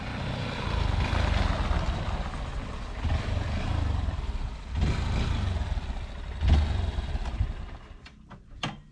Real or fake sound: real